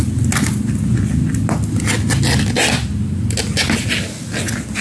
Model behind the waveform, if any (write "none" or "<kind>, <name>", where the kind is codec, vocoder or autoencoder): none